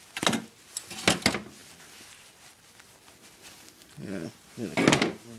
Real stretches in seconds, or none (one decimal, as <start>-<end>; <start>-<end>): 0.0-5.4